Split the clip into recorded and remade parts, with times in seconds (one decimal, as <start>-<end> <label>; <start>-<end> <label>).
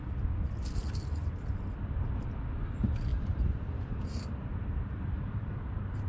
0.0-3.1 recorded; 3.1-6.1 remade